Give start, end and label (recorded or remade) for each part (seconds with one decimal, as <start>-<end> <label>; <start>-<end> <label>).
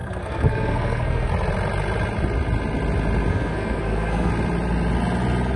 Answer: 0.0-1.3 remade; 1.3-3.3 recorded; 3.3-4.3 remade; 4.3-5.6 recorded